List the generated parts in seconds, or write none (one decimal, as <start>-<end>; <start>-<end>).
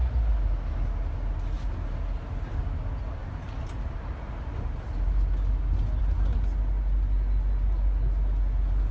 none